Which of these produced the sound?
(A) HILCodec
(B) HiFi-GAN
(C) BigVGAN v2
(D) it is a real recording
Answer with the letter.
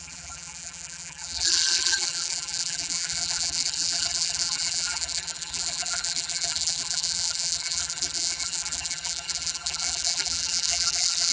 C